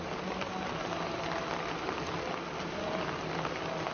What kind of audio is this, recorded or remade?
recorded